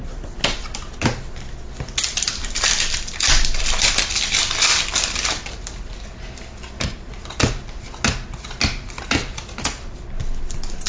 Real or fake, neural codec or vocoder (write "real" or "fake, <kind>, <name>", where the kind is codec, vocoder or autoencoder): real